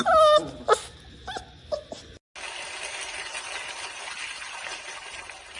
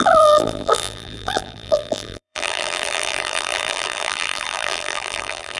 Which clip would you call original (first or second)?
first